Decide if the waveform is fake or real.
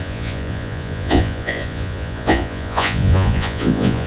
fake